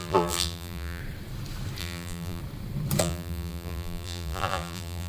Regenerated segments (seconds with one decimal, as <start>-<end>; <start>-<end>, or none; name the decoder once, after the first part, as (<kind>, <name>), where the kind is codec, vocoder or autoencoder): 0.0-1.0 (vocoder, BigVGAN v2); 1.8-2.4; 3.0-5.1